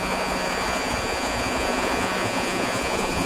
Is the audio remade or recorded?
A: remade